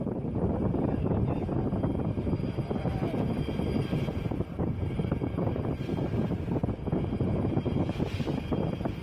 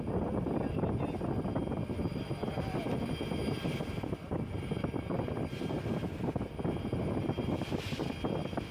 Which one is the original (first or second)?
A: second